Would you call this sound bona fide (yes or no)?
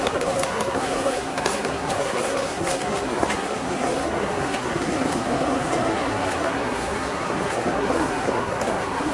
no